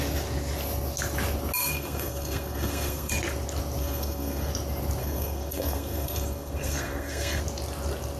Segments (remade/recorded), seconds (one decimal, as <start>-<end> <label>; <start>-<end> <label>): 0.0-1.6 recorded; 1.6-3.1 remade; 3.1-3.8 recorded; 3.8-4.5 remade; 4.5-5.0 recorded; 5.0-7.4 remade; 7.4-8.2 recorded